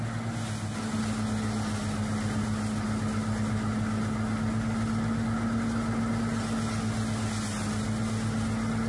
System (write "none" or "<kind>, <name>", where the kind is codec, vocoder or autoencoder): none